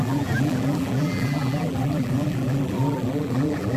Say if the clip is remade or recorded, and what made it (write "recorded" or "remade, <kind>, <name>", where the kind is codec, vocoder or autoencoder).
remade, vocoder, BigVGAN v2